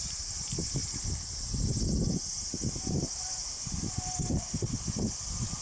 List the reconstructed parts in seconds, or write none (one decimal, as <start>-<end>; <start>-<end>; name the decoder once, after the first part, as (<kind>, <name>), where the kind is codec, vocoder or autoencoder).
none